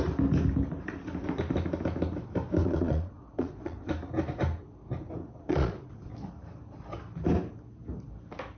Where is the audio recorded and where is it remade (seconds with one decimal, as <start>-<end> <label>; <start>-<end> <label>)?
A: 0.0-2.6 recorded; 2.6-3.9 remade; 3.9-5.2 recorded; 5.2-6.1 remade; 6.1-8.6 recorded